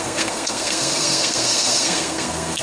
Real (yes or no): no